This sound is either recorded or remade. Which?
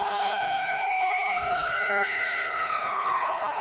remade